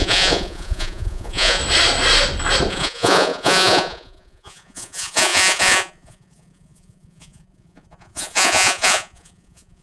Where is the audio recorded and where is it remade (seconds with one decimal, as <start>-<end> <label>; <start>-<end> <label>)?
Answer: 0.0-1.6 remade; 1.6-2.7 recorded; 2.7-9.8 remade